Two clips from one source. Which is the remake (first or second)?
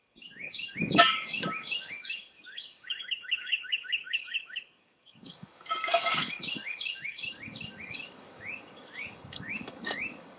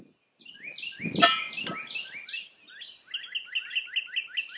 first